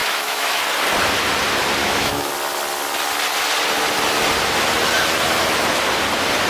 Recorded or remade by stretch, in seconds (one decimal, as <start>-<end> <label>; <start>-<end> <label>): 0.0-0.6 remade; 0.6-1.8 recorded; 1.8-2.3 remade; 2.3-6.5 recorded